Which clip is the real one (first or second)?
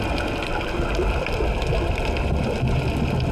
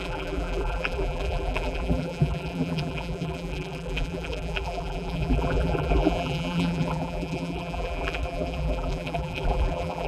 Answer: first